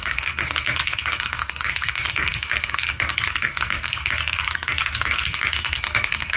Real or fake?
fake